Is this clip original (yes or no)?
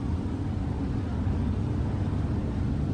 yes